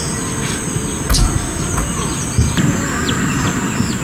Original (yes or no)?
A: yes